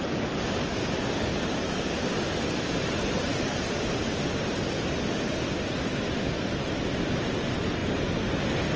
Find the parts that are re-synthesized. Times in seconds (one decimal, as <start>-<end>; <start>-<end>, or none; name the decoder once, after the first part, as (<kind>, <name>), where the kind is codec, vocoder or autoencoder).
0.6-2.2 (codec, DAC)